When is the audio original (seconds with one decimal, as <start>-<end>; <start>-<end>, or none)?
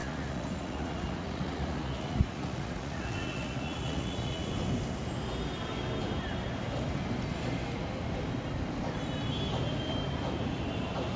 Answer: 4.5-11.2